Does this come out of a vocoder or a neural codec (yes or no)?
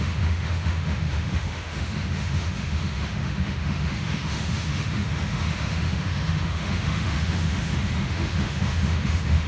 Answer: yes